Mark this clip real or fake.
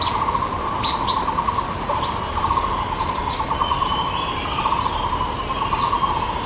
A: real